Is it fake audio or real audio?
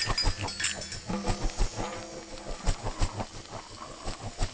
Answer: real